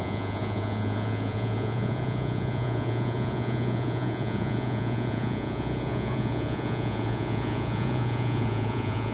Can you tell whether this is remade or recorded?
remade